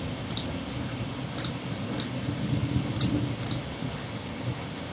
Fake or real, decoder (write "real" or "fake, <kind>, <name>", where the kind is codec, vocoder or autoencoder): real